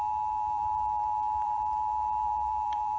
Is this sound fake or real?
fake